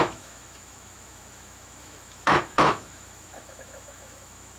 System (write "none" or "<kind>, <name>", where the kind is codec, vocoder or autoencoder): autoencoder, DAC-VAE